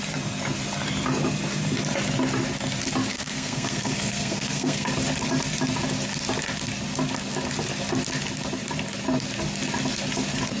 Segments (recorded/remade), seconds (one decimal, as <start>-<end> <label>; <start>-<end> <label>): 0.0-3.1 recorded; 3.1-4.9 remade; 4.9-10.6 recorded